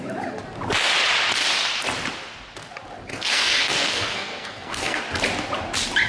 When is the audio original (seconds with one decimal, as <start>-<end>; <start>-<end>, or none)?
0.0-3.1; 5.0-6.1